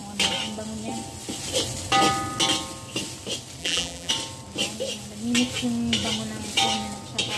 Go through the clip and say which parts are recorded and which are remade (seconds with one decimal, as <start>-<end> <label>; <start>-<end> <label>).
0.0-3.6 recorded; 3.6-4.1 remade; 4.1-7.4 recorded